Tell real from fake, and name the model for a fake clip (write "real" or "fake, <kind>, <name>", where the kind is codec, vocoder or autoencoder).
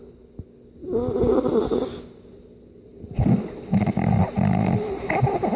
real